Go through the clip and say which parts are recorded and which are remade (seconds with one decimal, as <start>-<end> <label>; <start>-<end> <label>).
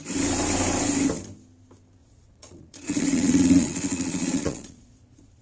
0.0-2.0 recorded; 2.0-5.4 remade